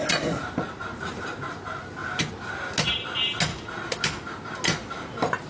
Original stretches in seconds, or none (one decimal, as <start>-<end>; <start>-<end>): 0.0-5.5